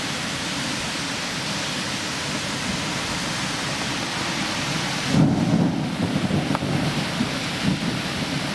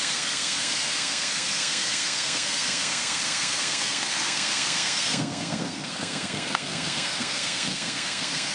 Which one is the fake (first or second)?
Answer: second